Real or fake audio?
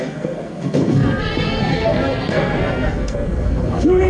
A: fake